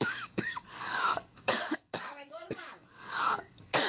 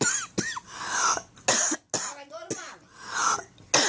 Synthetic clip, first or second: first